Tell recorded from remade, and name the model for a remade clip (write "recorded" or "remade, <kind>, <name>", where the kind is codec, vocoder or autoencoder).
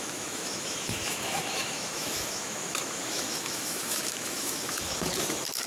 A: remade, autoencoder, DAC-VAE